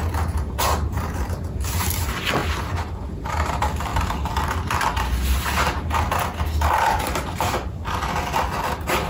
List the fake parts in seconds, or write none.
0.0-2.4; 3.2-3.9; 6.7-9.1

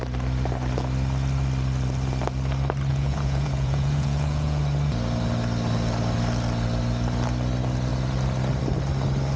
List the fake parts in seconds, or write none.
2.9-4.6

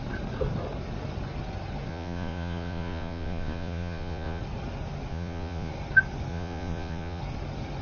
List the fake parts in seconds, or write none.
1.9-4.4; 5.1-5.7; 6.3-7.2

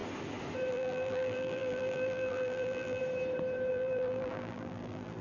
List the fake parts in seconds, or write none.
0.7-3.0; 3.7-5.2